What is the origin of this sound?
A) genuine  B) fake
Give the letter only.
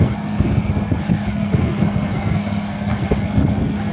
B